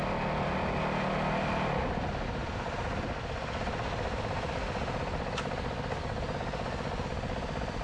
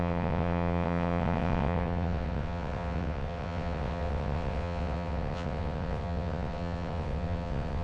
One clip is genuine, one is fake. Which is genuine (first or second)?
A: first